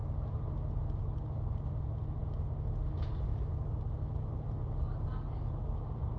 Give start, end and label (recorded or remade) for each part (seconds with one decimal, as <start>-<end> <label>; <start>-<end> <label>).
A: 0.0-6.2 recorded